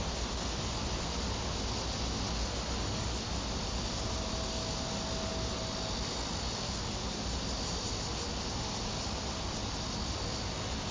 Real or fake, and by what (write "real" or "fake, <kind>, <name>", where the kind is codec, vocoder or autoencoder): real